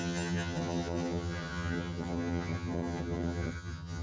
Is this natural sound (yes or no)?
no